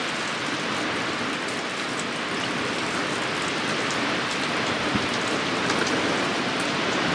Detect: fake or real real